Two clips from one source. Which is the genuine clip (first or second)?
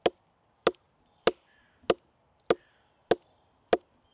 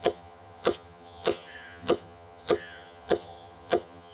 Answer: first